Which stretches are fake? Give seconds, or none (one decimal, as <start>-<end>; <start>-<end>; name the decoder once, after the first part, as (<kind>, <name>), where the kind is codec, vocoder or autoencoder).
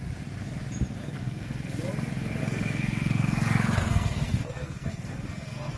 1.0-1.9 (codec, SNAC); 2.4-5.8